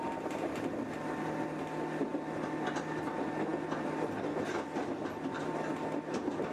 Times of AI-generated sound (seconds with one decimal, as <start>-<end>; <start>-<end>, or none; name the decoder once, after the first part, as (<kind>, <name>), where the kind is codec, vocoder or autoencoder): none